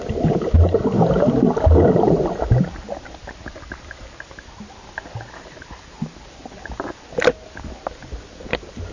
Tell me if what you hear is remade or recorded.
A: recorded